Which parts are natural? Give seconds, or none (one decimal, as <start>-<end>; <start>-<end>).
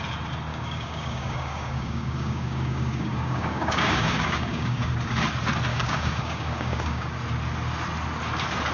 0.0-0.5; 4.9-5.7; 7.1-8.7